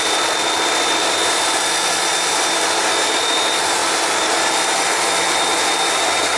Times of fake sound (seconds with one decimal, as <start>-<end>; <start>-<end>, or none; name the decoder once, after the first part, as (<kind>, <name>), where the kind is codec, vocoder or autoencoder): 0.0-6.4 (vocoder, BigVGAN v2)